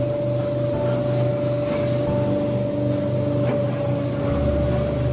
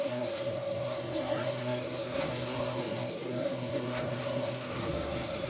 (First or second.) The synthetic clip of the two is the second